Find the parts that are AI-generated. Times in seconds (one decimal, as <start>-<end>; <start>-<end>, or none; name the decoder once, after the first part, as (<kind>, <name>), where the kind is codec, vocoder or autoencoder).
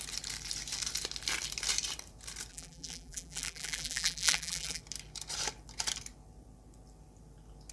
2.5-4.8 (vocoder, BigVGAN v2)